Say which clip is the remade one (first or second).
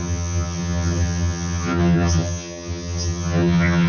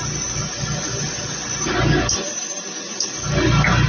first